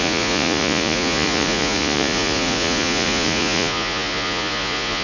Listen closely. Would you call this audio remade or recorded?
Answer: remade